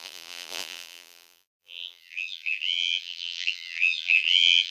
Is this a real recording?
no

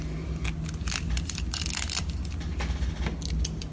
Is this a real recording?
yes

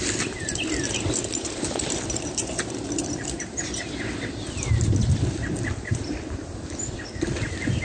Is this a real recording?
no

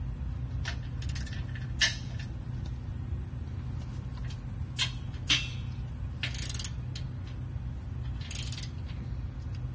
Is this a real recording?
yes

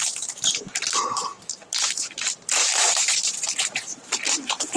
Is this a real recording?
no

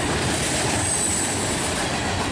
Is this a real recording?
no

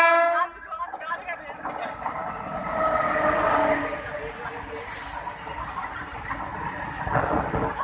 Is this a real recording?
yes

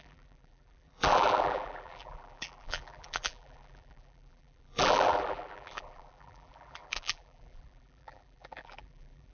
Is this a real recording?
no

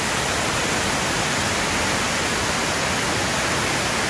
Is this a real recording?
yes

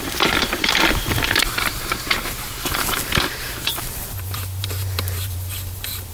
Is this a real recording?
no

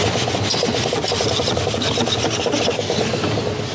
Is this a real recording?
yes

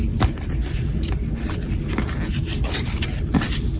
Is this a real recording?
no